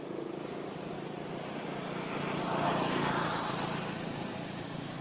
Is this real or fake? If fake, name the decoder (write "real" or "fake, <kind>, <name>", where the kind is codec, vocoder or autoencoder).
real